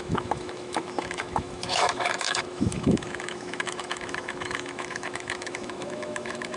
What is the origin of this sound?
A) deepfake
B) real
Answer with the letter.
A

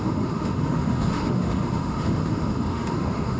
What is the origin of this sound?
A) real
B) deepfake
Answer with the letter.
B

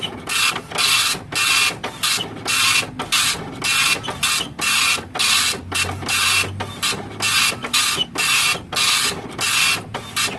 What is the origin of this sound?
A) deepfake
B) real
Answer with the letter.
B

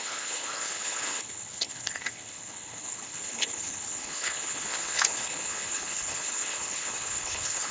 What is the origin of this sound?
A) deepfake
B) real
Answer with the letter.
A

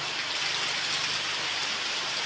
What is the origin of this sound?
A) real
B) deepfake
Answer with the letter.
A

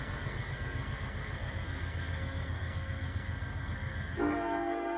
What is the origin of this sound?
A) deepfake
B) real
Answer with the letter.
A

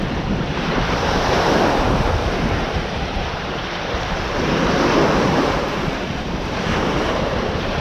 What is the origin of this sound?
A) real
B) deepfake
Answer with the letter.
B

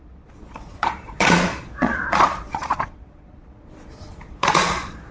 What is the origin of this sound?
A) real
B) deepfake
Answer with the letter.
B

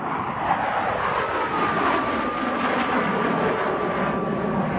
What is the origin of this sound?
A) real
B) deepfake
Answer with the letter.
A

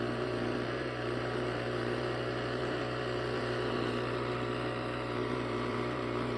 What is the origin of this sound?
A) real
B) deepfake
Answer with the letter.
B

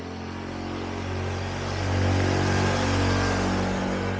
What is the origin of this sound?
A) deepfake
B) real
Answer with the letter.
B